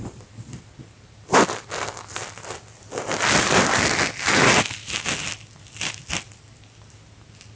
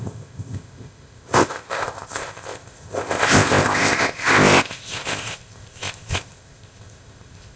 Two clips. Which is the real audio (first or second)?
first